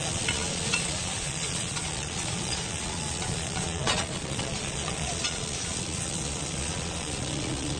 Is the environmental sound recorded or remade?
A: remade